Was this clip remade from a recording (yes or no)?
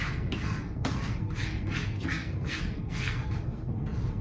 yes